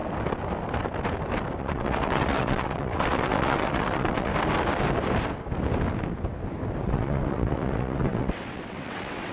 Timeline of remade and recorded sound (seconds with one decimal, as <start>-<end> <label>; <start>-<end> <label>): 0.0-1.6 recorded; 1.6-4.3 remade; 4.3-6.8 recorded; 6.8-9.3 remade